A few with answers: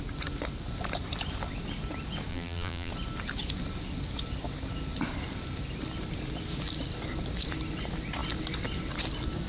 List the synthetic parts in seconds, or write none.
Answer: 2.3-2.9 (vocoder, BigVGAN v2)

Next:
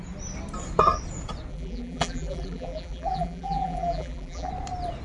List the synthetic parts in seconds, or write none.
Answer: 1.5-4.5 (vocoder, BigVGAN v2)